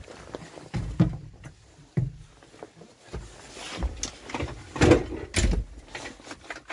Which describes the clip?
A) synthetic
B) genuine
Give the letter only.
B